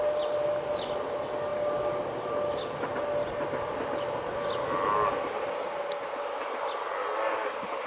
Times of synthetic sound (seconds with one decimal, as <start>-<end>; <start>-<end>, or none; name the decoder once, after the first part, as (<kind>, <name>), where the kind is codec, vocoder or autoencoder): none